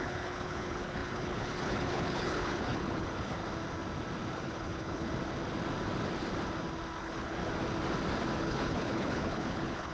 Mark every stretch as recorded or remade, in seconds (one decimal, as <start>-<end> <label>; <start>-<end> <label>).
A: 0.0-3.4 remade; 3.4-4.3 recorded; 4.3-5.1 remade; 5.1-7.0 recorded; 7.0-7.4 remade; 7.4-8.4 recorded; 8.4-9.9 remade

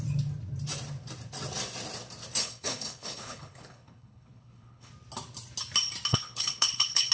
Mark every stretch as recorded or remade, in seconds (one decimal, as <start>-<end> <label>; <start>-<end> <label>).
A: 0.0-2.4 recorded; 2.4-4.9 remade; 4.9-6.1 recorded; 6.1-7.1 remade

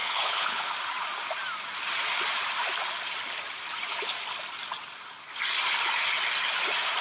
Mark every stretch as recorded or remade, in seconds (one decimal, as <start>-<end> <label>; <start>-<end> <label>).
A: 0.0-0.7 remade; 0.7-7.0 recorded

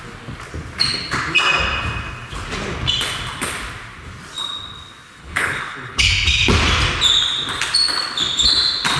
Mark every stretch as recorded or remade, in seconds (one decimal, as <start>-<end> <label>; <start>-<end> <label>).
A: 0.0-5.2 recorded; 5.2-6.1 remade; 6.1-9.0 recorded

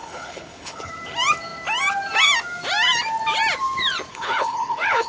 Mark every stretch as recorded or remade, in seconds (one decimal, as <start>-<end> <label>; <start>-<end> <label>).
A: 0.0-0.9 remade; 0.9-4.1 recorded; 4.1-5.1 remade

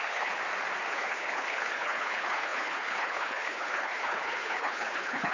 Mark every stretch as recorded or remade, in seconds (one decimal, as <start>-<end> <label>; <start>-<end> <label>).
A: 0.0-0.4 remade; 0.4-0.9 recorded; 0.9-5.3 remade

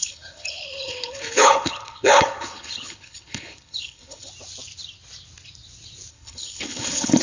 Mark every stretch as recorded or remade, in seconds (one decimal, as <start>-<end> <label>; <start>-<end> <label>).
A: 0.0-4.3 remade; 4.3-6.1 recorded; 6.1-7.2 remade